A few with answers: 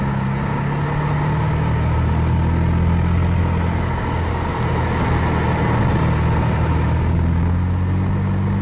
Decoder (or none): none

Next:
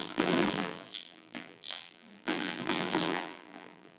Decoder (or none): vocoder, BigVGAN v2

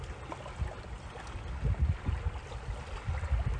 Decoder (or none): none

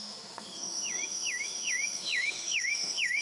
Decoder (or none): autoencoder, DAC-VAE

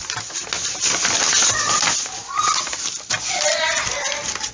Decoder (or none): none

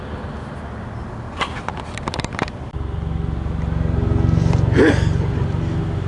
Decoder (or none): none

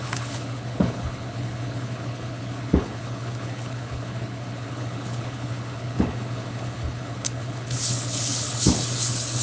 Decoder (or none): codec, HILCodec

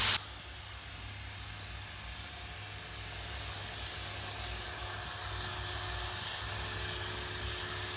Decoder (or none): none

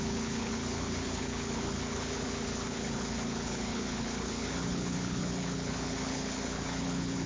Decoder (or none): codec, HILCodec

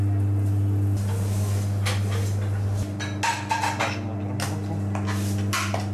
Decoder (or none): none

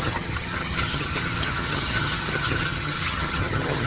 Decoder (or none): vocoder, HiFi-GAN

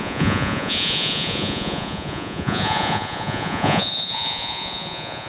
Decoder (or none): vocoder, Vocos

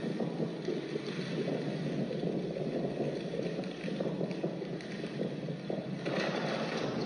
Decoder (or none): none